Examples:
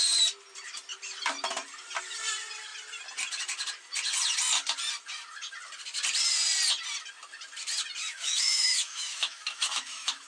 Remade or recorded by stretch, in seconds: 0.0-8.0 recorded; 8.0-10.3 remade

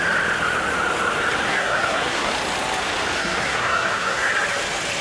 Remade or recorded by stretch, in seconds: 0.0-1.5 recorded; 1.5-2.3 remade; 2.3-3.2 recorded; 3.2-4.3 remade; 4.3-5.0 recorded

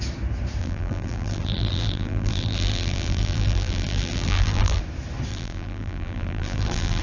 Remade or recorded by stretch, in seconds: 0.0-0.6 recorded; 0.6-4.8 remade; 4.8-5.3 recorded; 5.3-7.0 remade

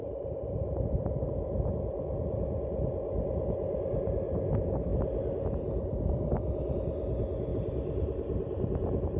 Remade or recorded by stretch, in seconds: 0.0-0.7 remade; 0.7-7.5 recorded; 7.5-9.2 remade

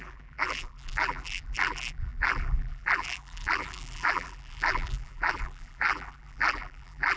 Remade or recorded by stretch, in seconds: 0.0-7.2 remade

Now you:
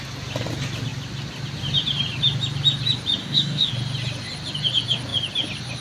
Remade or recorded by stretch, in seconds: 0.0-3.2 recorded; 3.2-3.7 remade; 3.7-5.8 recorded

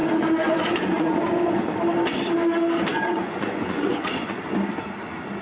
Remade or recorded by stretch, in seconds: 0.0-1.7 remade; 1.7-2.9 recorded; 2.9-4.4 remade; 4.4-5.4 recorded